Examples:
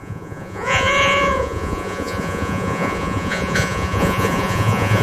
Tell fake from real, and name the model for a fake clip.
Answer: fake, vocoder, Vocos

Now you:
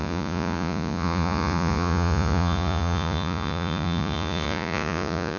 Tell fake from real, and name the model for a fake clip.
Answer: fake, vocoder, Vocos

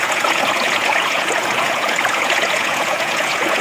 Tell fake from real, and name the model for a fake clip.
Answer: fake, vocoder, Vocos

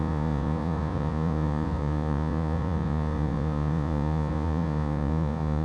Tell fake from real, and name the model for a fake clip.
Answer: fake, vocoder, Vocos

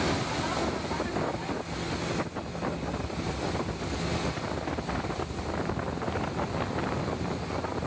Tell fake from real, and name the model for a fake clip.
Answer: real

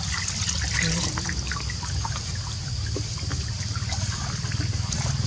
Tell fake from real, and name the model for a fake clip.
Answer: real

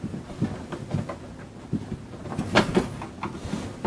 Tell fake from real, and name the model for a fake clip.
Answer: real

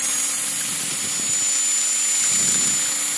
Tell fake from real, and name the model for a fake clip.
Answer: real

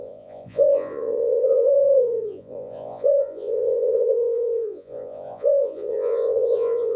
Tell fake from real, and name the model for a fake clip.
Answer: fake, vocoder, Vocos